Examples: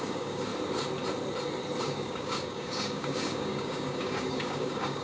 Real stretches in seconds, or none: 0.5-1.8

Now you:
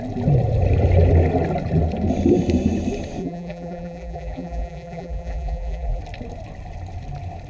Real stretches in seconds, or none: 0.0-3.2; 6.0-7.5